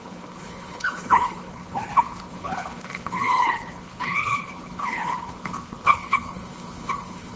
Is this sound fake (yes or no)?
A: yes